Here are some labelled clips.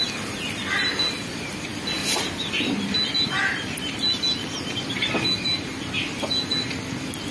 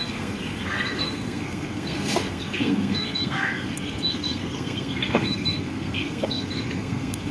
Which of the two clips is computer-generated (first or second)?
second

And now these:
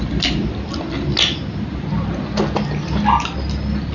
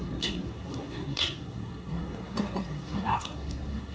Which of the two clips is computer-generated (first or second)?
second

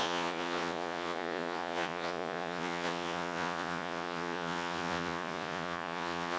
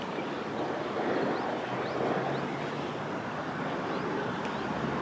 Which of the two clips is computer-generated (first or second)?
first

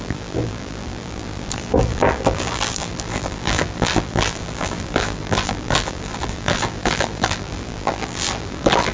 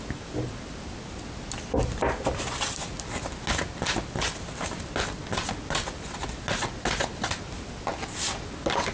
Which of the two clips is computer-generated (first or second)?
first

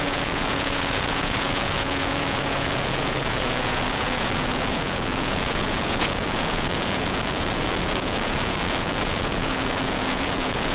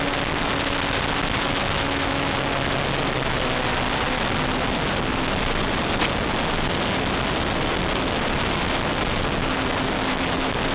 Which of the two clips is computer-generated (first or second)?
first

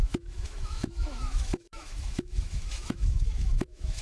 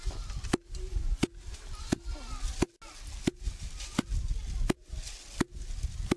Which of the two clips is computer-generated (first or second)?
first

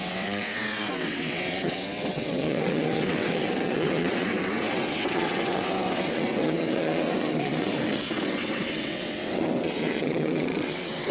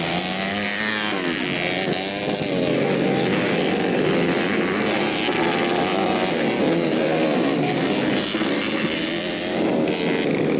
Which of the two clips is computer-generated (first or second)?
first